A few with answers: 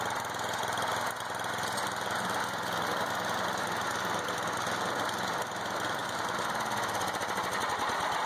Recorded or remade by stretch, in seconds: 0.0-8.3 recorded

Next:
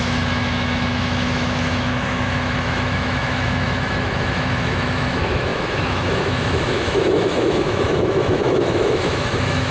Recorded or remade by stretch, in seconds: 0.0-9.7 remade

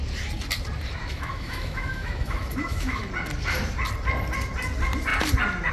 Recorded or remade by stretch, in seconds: 0.0-1.0 recorded; 1.0-3.1 remade; 3.1-5.7 recorded

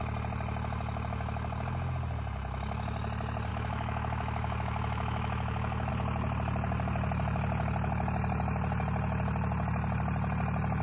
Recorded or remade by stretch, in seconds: 0.0-3.5 recorded; 3.5-5.9 remade; 5.9-10.8 recorded